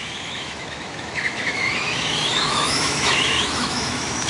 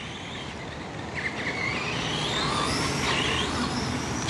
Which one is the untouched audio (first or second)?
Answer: second